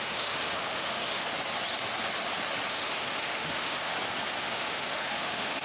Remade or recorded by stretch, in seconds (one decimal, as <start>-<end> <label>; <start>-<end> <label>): 0.0-1.2 remade; 1.2-2.7 recorded; 2.7-3.9 remade; 3.9-4.4 recorded; 4.4-5.6 remade